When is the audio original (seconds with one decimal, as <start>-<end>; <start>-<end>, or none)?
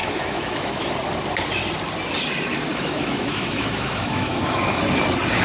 0.9-2.7; 4.8-5.4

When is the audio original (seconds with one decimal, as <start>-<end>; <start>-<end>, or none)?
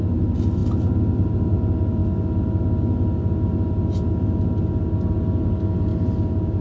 0.0-6.6